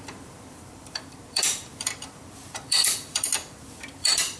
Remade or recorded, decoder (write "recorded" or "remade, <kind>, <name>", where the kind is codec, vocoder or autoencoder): remade, vocoder, BigVGAN v2